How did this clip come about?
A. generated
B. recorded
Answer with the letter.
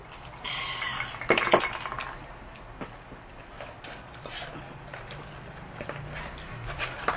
B